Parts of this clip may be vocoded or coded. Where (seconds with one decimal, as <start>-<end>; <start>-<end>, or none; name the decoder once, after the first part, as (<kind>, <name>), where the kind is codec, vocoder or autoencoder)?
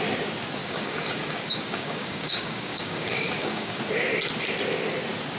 0.6-3.8 (codec, DAC)